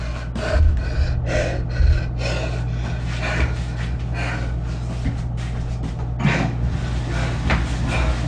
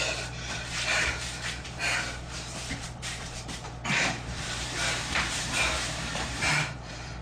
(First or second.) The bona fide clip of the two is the first